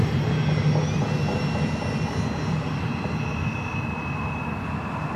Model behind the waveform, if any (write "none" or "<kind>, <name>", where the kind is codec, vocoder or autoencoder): none